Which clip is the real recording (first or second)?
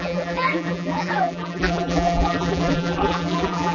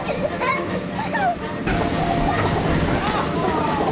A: second